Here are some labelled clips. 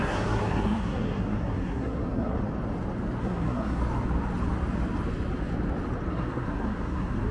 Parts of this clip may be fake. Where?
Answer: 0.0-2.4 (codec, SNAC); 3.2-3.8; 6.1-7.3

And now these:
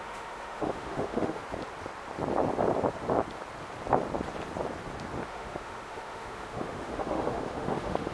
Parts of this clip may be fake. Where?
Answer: 0.0-1.4 (autoencoder, DAC-VAE); 5.3-8.1